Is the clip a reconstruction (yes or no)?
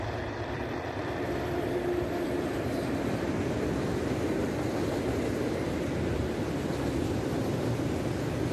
yes